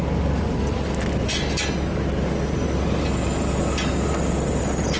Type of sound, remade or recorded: recorded